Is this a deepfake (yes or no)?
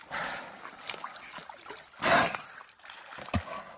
no